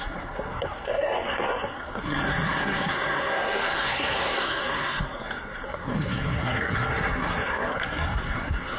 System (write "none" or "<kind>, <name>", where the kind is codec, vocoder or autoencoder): codec, SNAC